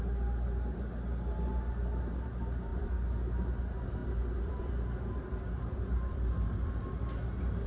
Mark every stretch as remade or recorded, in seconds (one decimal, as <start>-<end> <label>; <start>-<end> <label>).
0.0-2.7 recorded; 2.7-3.6 remade; 3.6-4.0 recorded; 4.0-6.8 remade; 6.8-7.7 recorded